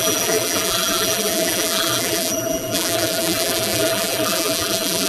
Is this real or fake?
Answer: fake